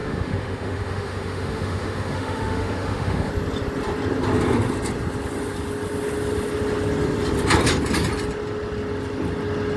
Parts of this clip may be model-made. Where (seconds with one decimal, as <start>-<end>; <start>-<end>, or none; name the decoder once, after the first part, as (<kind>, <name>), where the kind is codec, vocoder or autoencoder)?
0.0-3.3 (autoencoder, DAC-VAE)